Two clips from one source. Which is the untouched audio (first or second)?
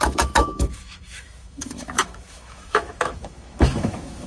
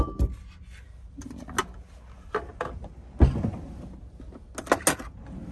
second